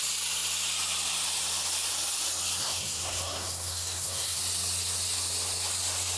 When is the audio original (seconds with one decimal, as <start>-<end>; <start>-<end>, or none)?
0.0-2.6; 4.4-6.2